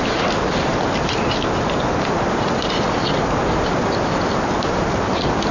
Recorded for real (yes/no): yes